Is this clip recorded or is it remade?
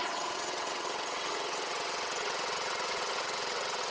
remade